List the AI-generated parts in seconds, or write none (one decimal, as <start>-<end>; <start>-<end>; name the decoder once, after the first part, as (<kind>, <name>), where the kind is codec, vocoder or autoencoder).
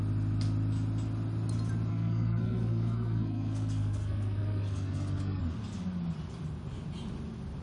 1.9-5.4 (codec, SNAC)